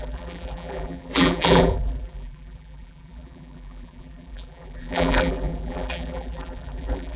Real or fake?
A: fake